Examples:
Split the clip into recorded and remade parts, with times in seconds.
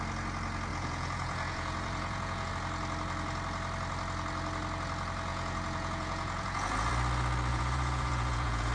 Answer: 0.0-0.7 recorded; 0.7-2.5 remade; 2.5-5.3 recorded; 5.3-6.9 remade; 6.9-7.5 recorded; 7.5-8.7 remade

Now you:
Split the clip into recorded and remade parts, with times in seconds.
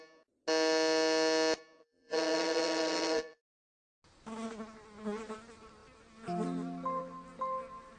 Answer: 0.0-1.8 recorded; 1.8-3.4 remade; 3.4-8.0 recorded